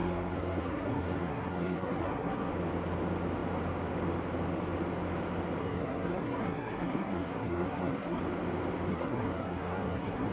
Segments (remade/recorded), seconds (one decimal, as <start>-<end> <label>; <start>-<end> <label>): 0.0-2.5 remade; 2.5-5.6 recorded; 5.6-8.2 remade; 8.2-8.9 recorded; 8.9-10.3 remade